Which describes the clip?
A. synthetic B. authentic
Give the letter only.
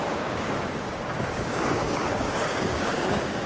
A